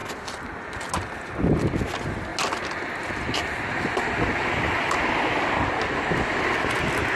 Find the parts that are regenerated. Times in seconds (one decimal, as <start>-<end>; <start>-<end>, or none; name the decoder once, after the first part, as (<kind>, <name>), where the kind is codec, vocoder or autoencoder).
none